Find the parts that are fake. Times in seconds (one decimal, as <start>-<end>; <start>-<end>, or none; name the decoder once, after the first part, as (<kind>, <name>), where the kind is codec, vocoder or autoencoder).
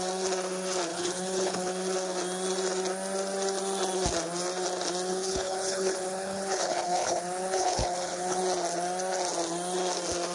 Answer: 0.9-1.7 (codec, HILCodec); 5.1-8.4